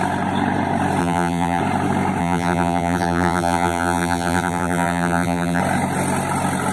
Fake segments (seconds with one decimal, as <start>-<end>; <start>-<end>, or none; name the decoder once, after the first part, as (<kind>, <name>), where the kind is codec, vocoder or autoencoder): 1.0-1.6 (vocoder, BigVGAN v2); 2.2-5.6